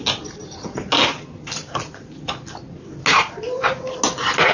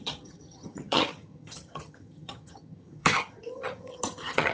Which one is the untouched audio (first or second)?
first